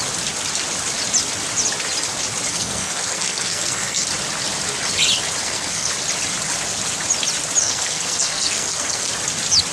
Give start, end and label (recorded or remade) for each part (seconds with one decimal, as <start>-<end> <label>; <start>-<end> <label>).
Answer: 0.0-2.5 recorded; 2.5-4.1 remade; 4.1-5.4 recorded; 5.4-5.9 remade; 5.9-7.6 recorded; 7.6-9.1 remade; 9.1-9.7 recorded